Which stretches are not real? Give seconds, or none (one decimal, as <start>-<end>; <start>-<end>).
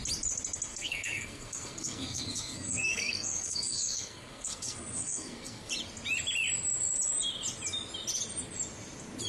0.7-5.7